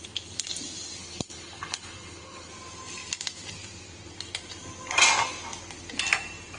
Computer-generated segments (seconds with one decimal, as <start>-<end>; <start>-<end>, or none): 1.0-2.5